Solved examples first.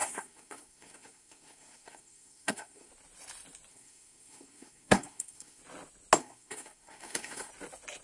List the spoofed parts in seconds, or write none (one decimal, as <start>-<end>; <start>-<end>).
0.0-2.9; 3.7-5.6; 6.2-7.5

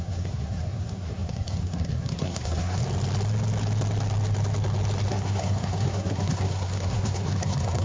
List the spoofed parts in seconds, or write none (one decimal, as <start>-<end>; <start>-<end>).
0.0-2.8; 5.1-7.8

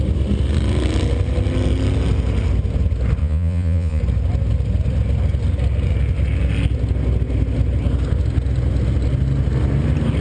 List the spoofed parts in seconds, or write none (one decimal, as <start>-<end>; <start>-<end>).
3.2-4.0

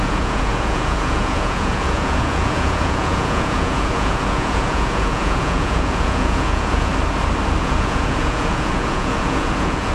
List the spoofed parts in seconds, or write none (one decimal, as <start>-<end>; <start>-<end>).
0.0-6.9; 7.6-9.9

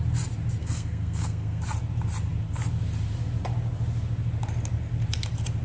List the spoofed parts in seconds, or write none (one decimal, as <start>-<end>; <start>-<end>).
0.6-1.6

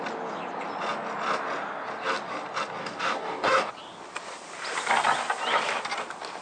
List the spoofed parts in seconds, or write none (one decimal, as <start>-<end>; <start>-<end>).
2.8-3.7